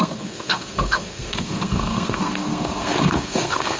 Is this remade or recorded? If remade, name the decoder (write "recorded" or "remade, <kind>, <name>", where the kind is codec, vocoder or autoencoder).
remade, codec, SNAC